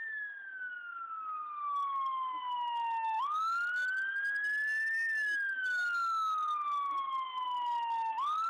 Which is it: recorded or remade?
recorded